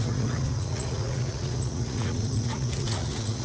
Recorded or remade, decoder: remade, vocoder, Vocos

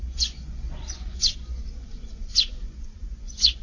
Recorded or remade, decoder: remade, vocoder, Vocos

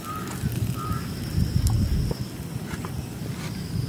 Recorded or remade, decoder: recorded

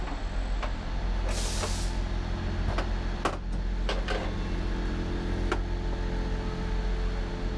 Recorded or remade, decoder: recorded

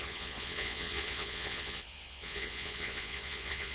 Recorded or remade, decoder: remade, vocoder, Vocos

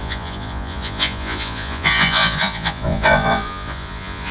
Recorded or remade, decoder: remade, vocoder, Vocos